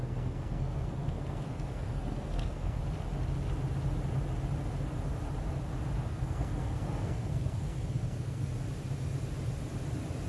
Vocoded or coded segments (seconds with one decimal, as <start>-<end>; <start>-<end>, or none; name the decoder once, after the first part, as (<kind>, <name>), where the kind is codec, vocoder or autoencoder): 0.0-2.8 (codec, SNAC); 6.1-8.5